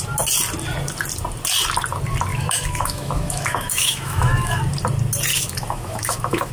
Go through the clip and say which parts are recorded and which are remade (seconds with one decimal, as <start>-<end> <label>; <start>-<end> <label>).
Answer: 0.0-2.3 recorded; 2.3-4.6 remade; 4.6-5.3 recorded; 5.3-6.5 remade